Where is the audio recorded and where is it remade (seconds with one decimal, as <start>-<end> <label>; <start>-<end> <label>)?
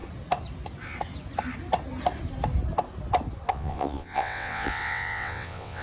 0.0-3.5 recorded; 3.5-5.8 remade